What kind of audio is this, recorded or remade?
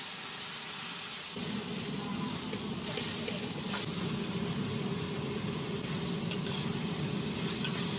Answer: recorded